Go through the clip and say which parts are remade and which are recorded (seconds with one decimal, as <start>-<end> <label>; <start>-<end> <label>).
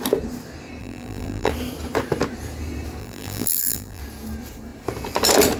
0.0-0.8 recorded; 0.8-1.5 remade; 1.5-3.0 recorded; 3.0-4.0 remade; 4.0-5.6 recorded